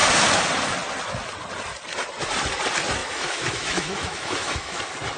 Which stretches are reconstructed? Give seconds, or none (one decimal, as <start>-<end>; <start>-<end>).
3.0-4.8